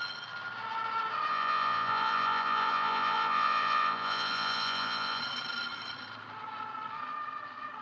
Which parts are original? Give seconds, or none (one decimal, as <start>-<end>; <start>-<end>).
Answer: 0.0-1.3; 5.2-7.8